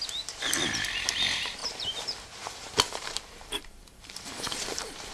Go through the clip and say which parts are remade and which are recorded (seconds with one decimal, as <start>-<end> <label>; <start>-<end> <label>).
0.0-1.6 recorded; 1.6-5.1 remade